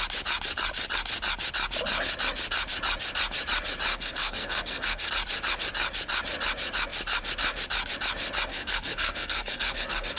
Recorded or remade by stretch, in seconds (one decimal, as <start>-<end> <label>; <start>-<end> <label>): 0.0-3.9 recorded; 3.9-5.1 remade; 5.1-8.5 recorded; 8.5-10.2 remade